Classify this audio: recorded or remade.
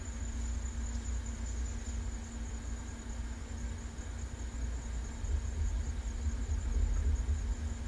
recorded